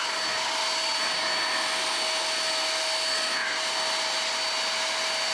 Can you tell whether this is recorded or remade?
recorded